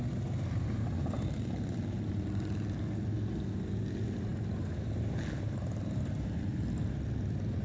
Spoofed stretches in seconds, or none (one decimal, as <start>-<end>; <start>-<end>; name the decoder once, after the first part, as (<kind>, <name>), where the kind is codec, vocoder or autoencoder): none